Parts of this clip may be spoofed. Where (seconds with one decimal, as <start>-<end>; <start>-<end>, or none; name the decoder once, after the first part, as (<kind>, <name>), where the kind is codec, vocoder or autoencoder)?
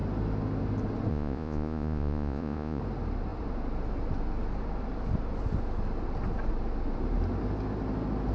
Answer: 1.1-2.8 (vocoder, Vocos)